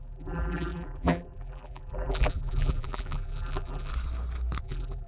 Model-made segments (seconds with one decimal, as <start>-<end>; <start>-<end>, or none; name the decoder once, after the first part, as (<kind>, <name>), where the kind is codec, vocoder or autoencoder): 0.0-3.9 (vocoder, BigVGAN v2); 4.6-5.1